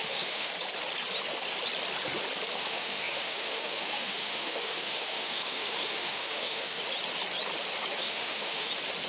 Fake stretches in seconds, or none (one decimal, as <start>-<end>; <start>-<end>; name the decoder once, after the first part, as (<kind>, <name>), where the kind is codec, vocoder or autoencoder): 0.0-0.5 (autoencoder, DAC-VAE); 2.6-6.8; 8.0-8.7